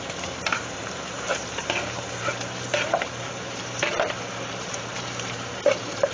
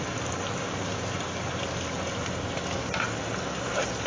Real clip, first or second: second